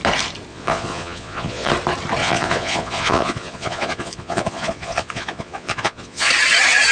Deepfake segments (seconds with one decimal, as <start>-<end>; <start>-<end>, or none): 0.5-1.7; 2.2-6.3